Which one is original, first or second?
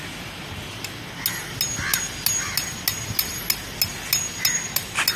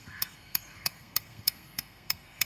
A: first